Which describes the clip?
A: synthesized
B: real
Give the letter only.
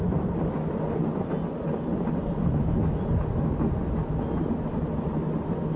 B